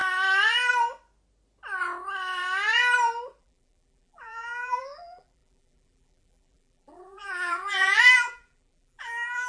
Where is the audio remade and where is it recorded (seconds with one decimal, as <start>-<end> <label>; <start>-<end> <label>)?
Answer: 0.0-3.4 recorded; 3.4-9.5 remade